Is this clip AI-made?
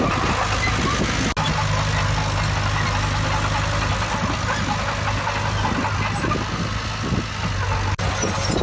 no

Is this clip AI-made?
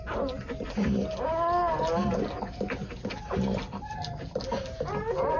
no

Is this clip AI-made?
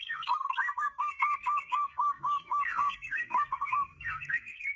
yes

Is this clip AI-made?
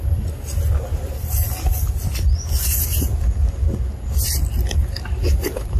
no